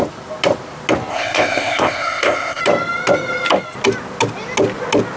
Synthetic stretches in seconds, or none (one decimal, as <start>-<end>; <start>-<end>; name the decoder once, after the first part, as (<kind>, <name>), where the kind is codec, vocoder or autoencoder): 1.1-2.6 (codec, ZipCodec)

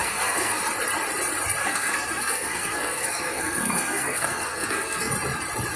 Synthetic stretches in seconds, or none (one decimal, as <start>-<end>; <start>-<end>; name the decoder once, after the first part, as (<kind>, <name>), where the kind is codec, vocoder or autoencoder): 0.0-0.6 (codec, SNAC); 1.6-5.1

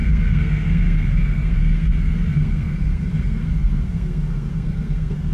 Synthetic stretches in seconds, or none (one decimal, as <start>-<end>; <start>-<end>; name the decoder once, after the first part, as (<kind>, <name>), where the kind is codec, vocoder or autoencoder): 0.0-5.3 (codec, SNAC)